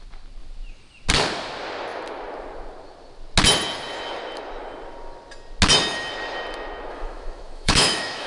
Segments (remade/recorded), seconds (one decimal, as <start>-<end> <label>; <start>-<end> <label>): 0.0-6.9 recorded; 6.9-8.3 remade